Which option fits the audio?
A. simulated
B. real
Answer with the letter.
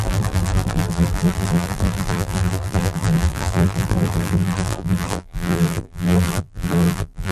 A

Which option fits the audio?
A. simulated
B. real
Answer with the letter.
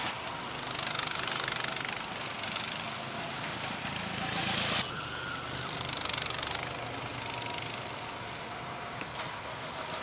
B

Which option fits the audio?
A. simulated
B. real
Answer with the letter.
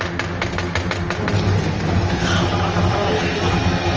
B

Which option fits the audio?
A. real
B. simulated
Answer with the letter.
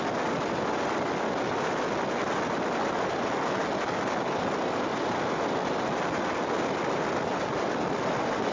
A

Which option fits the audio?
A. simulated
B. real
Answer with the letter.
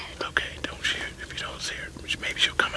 B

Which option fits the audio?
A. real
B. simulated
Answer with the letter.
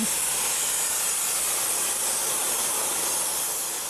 A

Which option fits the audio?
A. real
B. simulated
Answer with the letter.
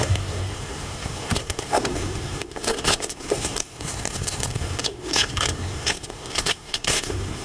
B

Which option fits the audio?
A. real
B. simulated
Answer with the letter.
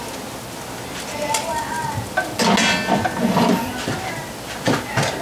A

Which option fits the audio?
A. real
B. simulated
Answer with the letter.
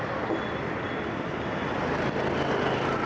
A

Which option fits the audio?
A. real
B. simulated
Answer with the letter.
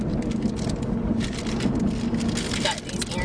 A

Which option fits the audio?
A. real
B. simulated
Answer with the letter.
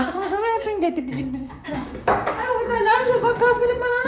B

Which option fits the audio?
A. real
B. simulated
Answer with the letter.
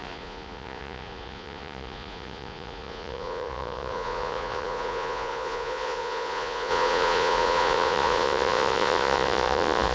B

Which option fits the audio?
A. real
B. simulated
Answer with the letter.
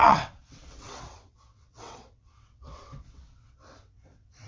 B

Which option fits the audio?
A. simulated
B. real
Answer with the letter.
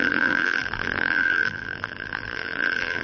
A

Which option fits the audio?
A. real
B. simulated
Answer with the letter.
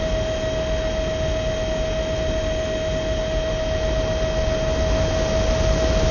A